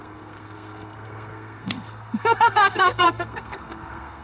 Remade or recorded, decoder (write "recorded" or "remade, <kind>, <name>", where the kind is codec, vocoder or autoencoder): remade, codec, SNAC